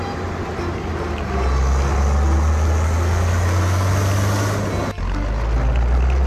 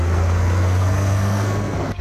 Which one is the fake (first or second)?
second